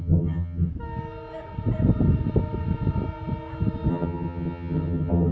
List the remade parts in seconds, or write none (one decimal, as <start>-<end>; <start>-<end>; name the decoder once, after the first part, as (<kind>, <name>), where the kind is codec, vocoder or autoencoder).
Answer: 0.0-0.7 (vocoder, HiFi-GAN); 3.9-5.3